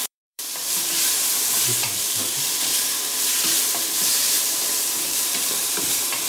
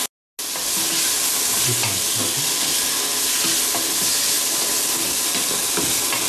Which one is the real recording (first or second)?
second